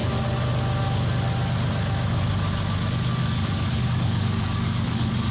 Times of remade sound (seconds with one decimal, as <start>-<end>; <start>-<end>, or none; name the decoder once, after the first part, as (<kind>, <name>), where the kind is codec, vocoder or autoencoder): 3.2-5.3 (codec, DAC)